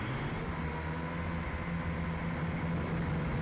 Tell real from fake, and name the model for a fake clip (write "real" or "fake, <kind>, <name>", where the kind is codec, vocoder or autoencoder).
real